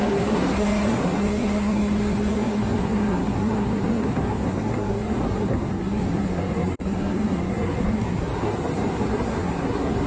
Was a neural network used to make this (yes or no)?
yes